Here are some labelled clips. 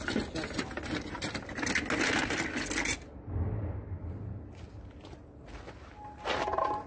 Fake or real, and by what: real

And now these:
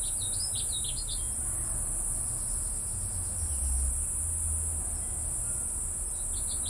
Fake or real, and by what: real